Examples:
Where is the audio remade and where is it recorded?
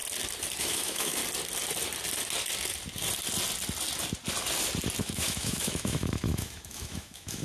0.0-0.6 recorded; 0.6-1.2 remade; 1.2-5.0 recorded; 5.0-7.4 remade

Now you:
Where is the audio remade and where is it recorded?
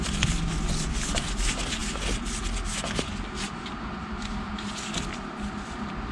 0.0-6.1 recorded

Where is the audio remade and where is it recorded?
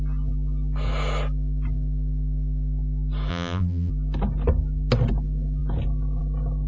0.0-3.3 recorded; 3.3-3.9 remade; 3.9-6.7 recorded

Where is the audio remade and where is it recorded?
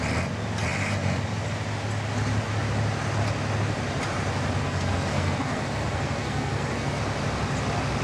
0.0-4.6 recorded; 4.6-7.0 remade; 7.0-8.0 recorded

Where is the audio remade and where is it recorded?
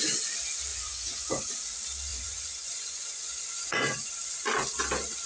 0.0-0.7 recorded; 0.7-1.5 remade; 1.5-2.1 recorded; 2.1-4.1 remade; 4.1-5.3 recorded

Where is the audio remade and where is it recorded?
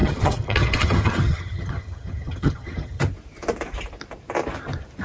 0.0-3.0 remade; 3.0-5.0 recorded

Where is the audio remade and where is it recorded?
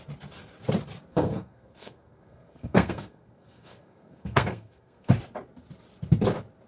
0.0-1.1 recorded; 1.1-5.1 remade; 5.1-6.7 recorded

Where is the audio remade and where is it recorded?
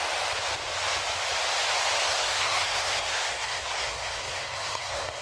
0.0-2.0 recorded; 2.0-5.2 remade